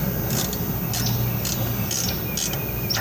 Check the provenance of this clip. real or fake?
real